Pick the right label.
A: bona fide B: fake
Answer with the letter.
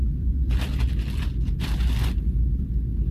A